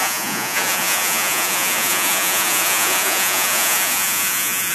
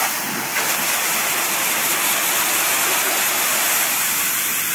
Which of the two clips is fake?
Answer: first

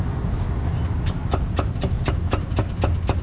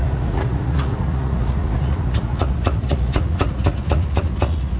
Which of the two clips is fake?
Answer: second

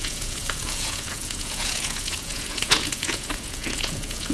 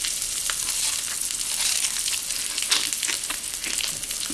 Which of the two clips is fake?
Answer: first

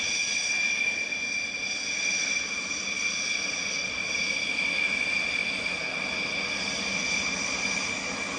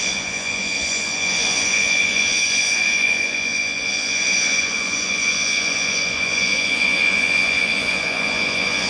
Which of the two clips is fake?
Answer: second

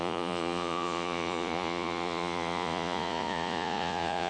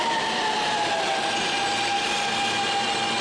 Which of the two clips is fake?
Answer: first